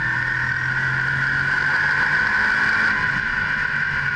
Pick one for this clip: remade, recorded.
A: recorded